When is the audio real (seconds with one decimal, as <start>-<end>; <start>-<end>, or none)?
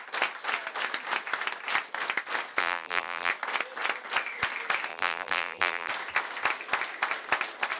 0.0-2.6; 3.3-4.9; 5.9-7.8